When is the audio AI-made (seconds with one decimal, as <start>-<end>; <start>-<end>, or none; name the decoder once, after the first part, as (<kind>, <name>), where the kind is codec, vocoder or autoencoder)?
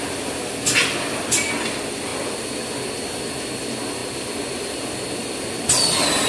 none